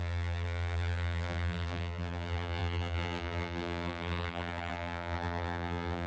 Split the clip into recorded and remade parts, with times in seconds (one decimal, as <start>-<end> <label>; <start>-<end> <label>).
0.0-6.1 remade